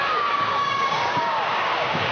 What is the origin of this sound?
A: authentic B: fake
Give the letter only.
B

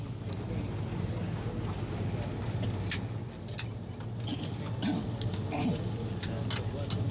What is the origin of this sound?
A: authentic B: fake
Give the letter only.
A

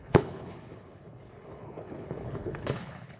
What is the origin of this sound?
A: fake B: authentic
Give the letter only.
A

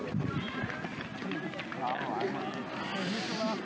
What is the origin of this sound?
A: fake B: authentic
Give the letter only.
B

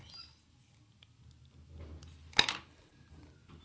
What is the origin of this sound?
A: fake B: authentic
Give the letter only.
B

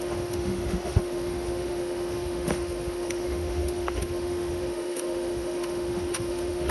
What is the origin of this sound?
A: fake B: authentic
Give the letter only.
A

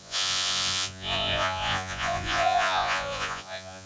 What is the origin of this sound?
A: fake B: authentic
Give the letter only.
A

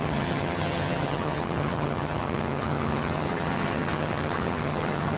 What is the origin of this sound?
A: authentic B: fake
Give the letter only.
B